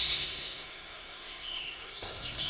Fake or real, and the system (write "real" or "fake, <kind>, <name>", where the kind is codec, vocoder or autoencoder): fake, codec, SNAC